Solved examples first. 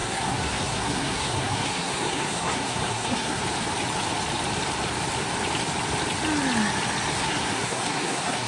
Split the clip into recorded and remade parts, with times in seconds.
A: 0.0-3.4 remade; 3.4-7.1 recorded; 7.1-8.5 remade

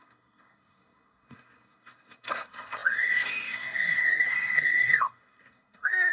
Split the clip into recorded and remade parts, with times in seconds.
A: 0.0-6.1 remade

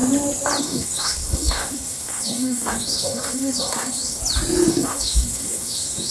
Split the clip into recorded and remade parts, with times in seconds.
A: 0.0-0.6 recorded; 0.6-4.2 remade; 4.2-4.7 recorded; 4.7-6.1 remade

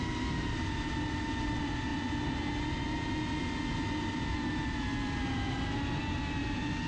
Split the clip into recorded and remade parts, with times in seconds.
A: 0.0-6.9 recorded

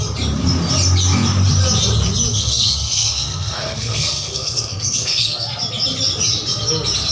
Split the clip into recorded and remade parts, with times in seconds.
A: 0.0-2.3 recorded; 2.3-5.6 remade; 5.6-7.1 recorded

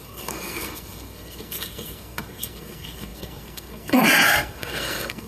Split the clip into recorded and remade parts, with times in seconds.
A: 0.0-5.3 remade